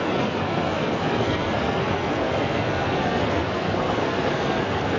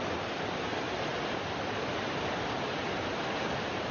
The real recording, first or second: second